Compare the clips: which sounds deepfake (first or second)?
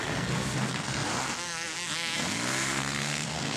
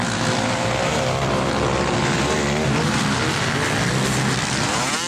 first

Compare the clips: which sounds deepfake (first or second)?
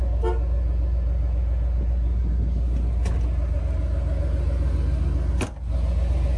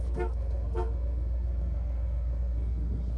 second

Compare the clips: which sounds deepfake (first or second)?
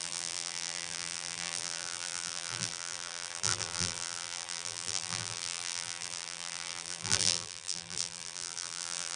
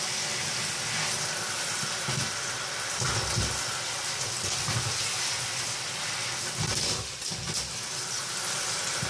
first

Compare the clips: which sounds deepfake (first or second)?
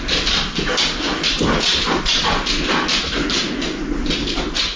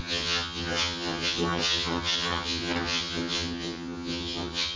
second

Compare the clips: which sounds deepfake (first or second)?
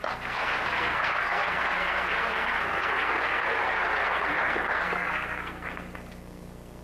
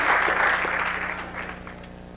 first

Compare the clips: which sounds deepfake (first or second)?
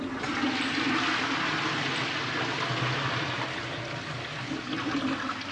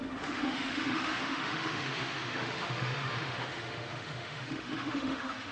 second